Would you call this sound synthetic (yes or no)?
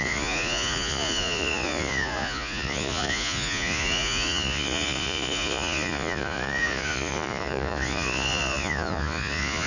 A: yes